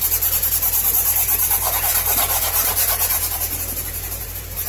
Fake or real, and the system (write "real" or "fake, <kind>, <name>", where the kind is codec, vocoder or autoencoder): fake, vocoder, BigVGAN v2